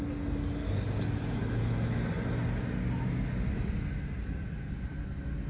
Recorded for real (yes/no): yes